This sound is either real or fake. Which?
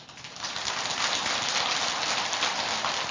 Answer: real